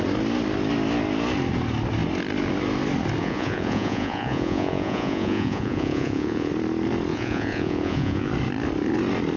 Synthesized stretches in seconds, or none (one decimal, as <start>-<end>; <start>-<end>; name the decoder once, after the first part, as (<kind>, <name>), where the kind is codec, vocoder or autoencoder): 3.2-6.5 (vocoder, Vocos); 7.1-8.3